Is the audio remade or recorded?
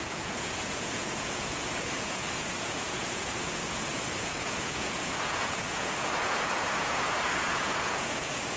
remade